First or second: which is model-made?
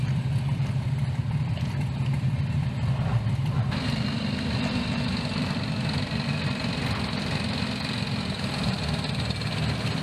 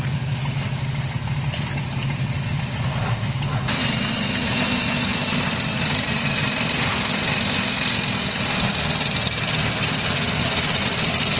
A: first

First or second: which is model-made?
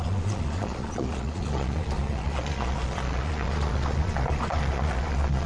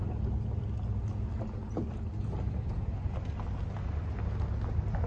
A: first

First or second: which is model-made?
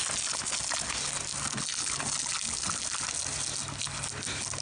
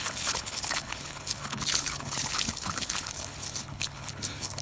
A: second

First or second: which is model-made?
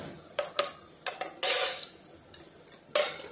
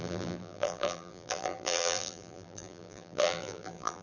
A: second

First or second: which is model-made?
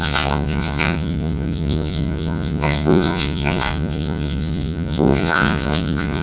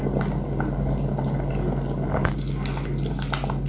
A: first